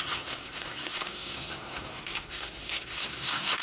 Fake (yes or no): yes